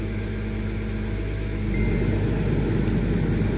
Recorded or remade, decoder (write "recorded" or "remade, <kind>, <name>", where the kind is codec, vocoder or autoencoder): recorded